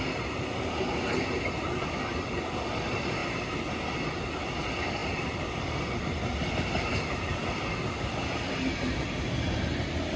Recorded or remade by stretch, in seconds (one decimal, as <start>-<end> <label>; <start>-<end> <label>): 0.0-10.2 recorded